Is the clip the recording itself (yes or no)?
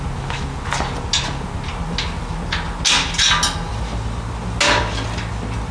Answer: yes